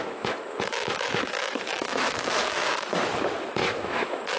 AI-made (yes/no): yes